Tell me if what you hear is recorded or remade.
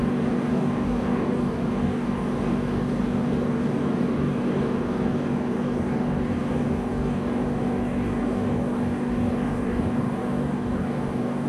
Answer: remade